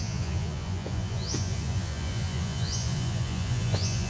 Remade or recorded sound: remade